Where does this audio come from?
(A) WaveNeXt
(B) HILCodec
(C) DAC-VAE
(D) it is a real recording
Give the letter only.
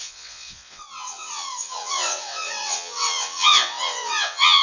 A